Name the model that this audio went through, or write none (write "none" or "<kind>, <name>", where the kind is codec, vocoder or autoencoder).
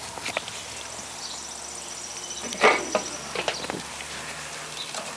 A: vocoder, BigVGAN v2